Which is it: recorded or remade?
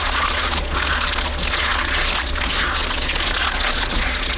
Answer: remade